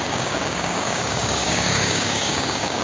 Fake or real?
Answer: fake